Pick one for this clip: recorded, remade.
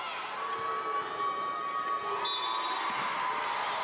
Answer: recorded